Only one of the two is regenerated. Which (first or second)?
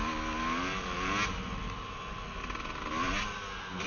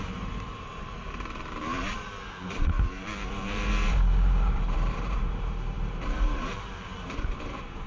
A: second